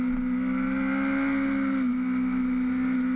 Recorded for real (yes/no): yes